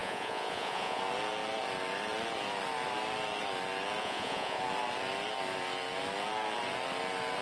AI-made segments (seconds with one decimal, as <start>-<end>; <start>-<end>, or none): 0.0-1.0; 4.0-4.6